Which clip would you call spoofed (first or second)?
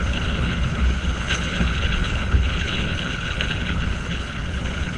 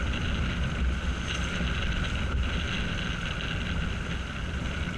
first